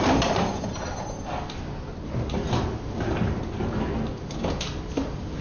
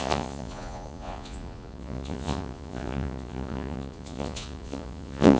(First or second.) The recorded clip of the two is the first